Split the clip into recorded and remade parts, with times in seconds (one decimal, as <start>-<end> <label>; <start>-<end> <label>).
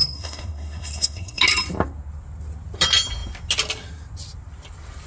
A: 0.0-1.4 remade; 1.4-5.1 recorded